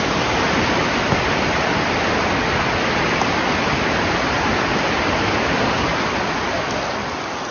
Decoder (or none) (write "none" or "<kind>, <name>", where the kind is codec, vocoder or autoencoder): none